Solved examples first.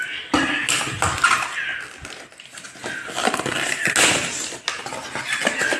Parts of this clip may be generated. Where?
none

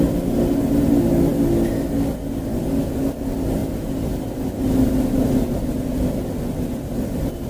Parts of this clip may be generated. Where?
none

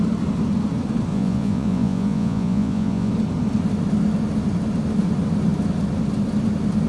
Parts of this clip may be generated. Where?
1.1-3.1 (vocoder, Vocos)